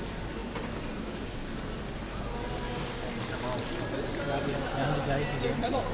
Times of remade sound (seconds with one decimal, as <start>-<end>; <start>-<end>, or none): none